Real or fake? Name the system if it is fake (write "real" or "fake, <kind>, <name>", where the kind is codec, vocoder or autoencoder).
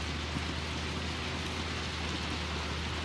real